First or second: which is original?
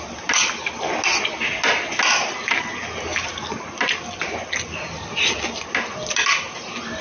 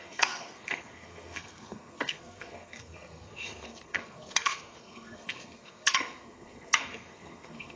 first